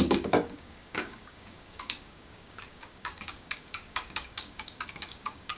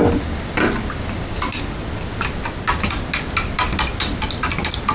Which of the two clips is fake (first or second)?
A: first